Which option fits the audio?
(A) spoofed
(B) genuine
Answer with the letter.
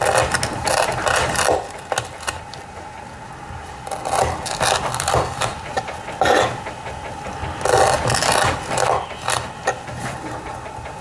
B